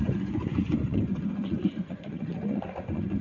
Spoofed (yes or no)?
yes